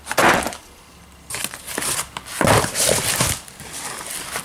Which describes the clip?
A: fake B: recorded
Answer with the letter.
B